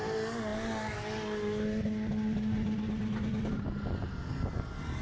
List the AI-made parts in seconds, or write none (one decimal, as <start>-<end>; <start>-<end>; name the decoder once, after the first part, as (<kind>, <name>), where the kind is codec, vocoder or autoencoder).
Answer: none